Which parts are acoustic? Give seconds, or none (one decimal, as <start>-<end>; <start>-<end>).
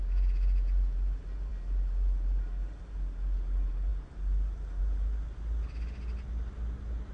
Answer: 0.0-7.1